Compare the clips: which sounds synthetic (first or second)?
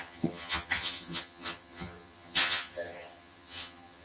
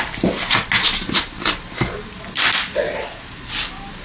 first